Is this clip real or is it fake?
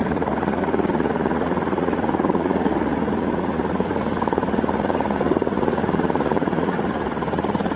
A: fake